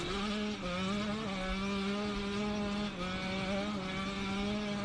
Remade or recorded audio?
recorded